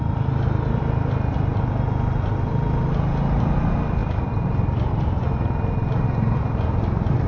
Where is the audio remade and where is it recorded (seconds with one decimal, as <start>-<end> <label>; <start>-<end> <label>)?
0.0-7.3 recorded